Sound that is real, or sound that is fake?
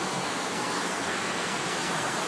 fake